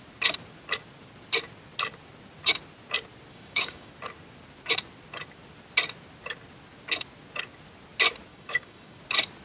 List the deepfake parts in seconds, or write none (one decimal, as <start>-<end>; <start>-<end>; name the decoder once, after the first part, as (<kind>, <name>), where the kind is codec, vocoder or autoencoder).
3.3-3.9 (codec, DAC); 8.3-9.0